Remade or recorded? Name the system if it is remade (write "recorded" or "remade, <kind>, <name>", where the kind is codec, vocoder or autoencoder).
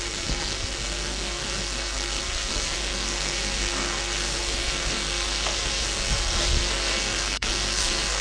remade, codec, SNAC